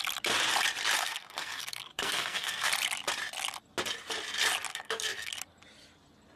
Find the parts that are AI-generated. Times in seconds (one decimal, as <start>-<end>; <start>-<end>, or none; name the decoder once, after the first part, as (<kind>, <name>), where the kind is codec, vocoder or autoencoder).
1.0-2.7 (codec, SNAC); 4.7-5.3